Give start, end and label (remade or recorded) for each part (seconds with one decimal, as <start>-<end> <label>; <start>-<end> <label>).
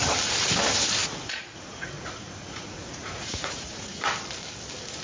0.0-1.0 recorded; 1.0-4.0 remade; 4.0-5.0 recorded